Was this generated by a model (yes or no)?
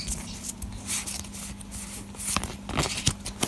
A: no